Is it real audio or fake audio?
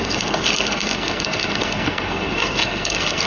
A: fake